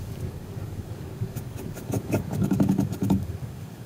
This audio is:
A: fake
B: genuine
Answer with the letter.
A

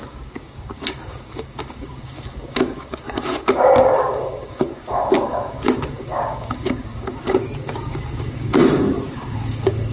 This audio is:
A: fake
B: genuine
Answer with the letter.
A